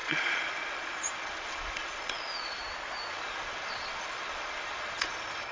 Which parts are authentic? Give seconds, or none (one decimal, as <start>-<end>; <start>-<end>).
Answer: 2.6-3.1